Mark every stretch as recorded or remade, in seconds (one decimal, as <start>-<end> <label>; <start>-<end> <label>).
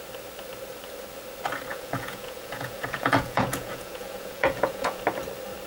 0.0-1.7 recorded; 1.7-5.0 remade; 5.0-5.7 recorded